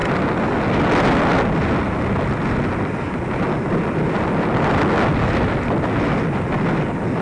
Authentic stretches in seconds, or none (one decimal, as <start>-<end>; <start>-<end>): 0.0-7.2